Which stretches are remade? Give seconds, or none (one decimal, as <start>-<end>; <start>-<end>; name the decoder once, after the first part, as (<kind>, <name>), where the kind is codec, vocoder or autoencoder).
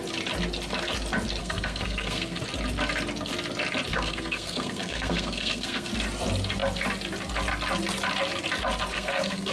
1.4-2.4 (codec, SNAC); 3.9-5.9; 8.9-9.5